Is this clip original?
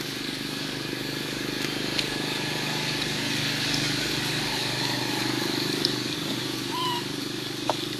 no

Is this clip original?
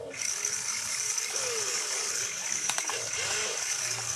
no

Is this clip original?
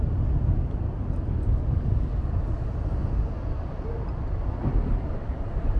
yes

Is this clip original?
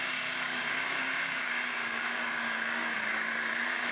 no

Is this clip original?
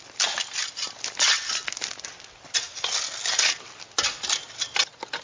yes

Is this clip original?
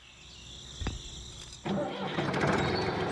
yes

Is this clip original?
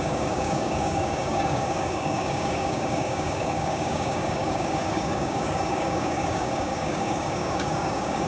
no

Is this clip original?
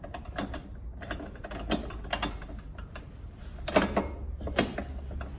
yes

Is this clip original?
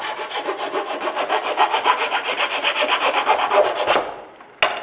yes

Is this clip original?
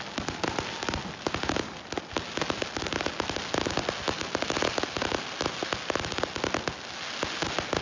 yes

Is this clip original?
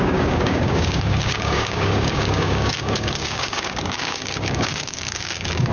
no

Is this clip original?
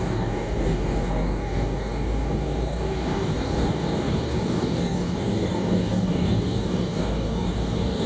no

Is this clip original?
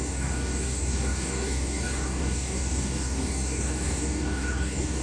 no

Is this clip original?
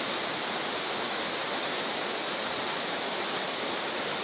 yes